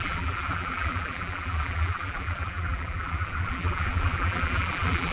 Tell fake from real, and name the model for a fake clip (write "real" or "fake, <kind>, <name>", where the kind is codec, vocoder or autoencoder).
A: fake, vocoder, BigVGAN v2